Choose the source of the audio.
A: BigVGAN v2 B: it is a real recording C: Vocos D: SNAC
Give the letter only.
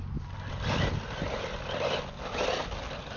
B